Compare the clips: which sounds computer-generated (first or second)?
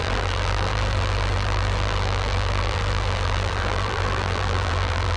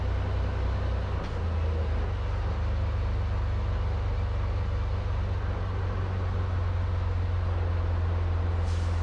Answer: first